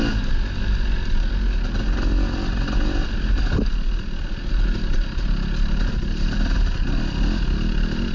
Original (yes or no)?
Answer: yes